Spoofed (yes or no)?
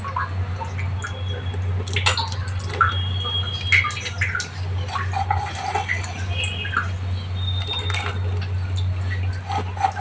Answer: no